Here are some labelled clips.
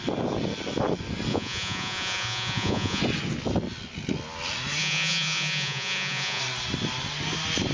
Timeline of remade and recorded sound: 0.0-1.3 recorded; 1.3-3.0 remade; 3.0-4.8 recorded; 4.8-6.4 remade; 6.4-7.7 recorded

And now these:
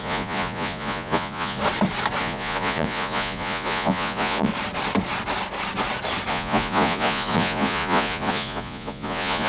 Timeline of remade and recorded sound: 0.0-1.6 remade; 1.6-2.2 recorded; 2.2-4.5 remade; 4.5-6.3 recorded; 6.3-9.5 remade

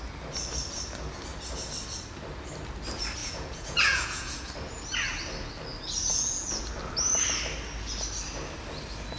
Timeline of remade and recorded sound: 0.0-3.2 recorded; 3.2-4.5 remade; 4.5-6.1 recorded; 6.1-6.6 remade; 6.6-9.2 recorded

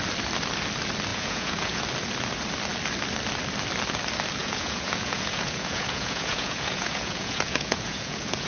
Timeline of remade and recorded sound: 0.0-1.1 recorded; 1.1-1.8 remade; 1.8-4.4 recorded; 4.4-8.5 remade